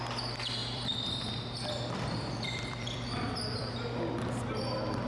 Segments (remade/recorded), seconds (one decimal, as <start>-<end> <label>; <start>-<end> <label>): 0.0-0.6 recorded; 0.6-3.7 remade; 3.7-5.1 recorded